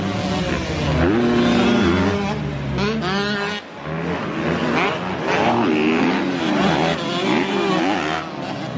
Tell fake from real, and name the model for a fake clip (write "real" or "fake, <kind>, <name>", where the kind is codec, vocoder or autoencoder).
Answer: real